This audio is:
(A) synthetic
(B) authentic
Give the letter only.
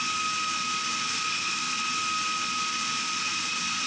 B